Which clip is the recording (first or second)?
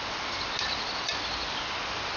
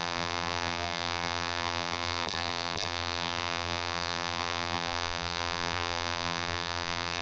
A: first